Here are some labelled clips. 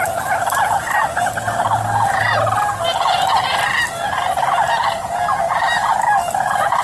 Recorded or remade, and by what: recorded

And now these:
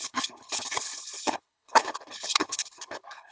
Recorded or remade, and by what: remade, codec, HILCodec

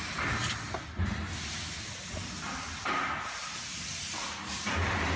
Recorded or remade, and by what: recorded